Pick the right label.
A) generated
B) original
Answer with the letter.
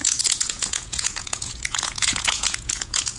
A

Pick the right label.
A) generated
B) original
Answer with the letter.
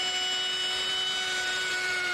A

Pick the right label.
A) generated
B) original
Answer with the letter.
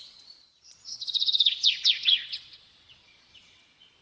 A